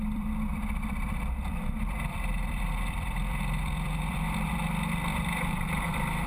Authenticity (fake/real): fake